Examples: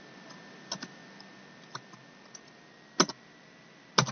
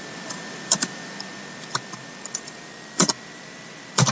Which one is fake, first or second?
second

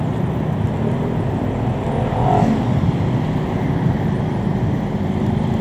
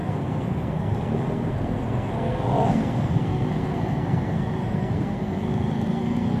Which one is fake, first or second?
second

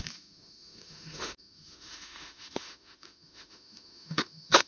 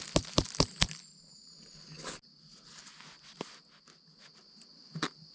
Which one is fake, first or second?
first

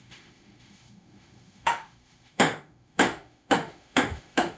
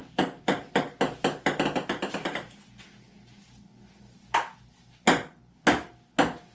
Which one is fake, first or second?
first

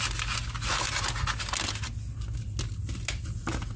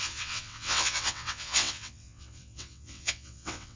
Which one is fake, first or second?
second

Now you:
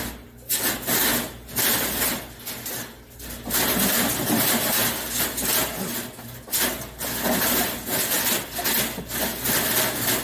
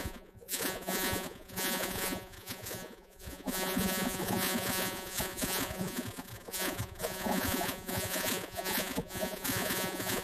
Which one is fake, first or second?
second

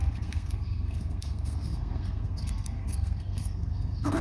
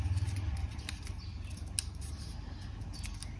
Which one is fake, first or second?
first